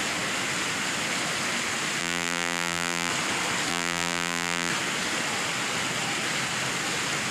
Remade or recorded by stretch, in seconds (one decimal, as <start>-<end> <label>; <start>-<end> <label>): 0.0-2.0 recorded; 2.0-3.1 remade; 3.1-3.7 recorded; 3.7-4.7 remade; 4.7-7.3 recorded